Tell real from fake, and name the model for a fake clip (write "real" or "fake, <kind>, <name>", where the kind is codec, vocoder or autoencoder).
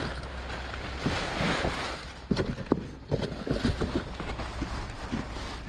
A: real